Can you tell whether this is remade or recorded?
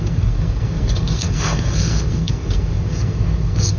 remade